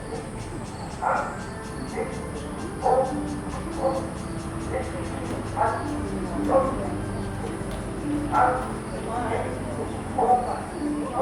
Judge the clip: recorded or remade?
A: recorded